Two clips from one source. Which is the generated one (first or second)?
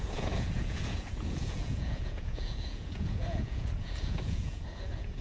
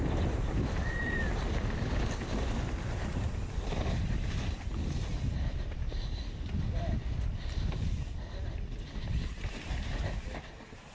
first